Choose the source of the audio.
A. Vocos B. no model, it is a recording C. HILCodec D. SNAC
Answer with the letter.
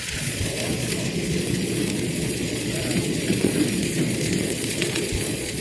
A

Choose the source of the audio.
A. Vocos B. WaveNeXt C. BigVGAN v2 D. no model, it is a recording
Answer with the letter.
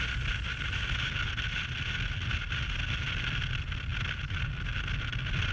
D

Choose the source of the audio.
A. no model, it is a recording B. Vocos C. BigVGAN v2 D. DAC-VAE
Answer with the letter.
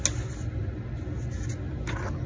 A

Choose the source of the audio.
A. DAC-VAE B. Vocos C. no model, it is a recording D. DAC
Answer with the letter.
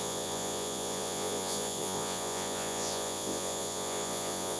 B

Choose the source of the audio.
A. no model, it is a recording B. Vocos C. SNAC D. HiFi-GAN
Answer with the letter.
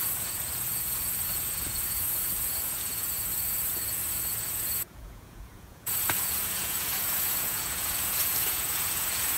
B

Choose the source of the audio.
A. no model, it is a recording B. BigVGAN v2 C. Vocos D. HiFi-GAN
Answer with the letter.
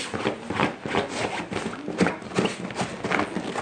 A